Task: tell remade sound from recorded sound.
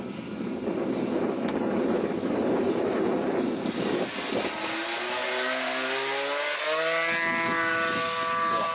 recorded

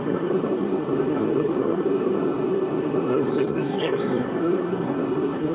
remade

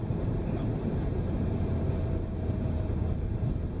remade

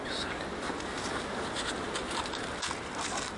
recorded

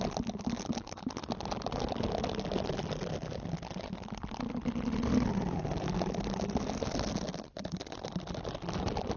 recorded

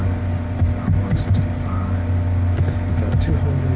recorded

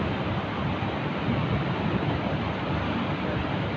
recorded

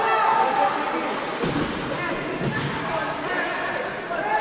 recorded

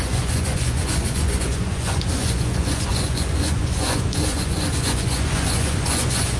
remade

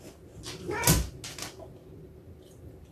recorded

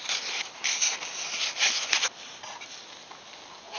recorded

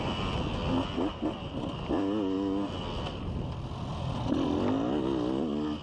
recorded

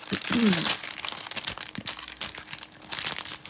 recorded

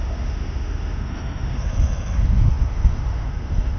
remade